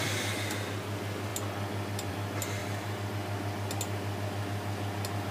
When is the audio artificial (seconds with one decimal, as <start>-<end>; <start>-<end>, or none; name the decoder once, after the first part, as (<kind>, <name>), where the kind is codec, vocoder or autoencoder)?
none